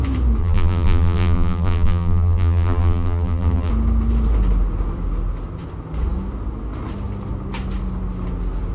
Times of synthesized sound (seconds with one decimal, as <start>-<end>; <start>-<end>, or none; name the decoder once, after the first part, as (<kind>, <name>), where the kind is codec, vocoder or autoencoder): 0.4-3.7 (vocoder, BigVGAN v2)